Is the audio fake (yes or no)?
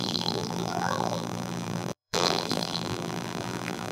yes